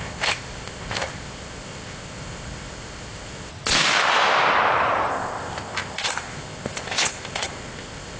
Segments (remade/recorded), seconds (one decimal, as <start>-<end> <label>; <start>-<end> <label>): 0.0-3.5 remade; 3.5-5.1 recorded; 5.1-8.2 remade